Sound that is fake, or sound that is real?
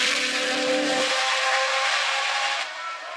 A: real